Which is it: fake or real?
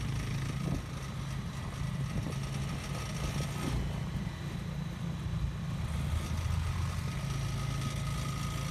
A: real